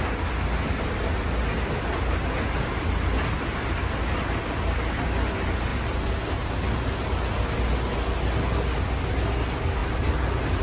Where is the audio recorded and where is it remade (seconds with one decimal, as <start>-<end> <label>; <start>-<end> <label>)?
0.0-5.7 recorded; 5.7-6.5 remade; 6.5-9.8 recorded; 9.8-10.6 remade